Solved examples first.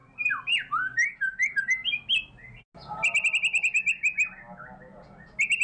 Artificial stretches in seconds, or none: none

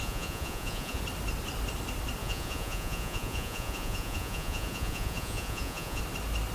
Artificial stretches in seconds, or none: 0.0-1.0 (vocoder, Vocos); 2.2-6.0

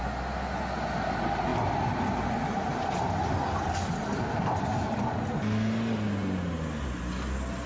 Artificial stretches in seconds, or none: none

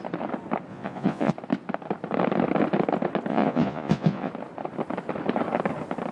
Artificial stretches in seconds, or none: 0.7-1.3 (vocoder, Vocos); 3.3-4.3

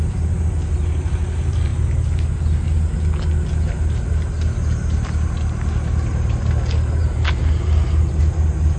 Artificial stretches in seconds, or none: none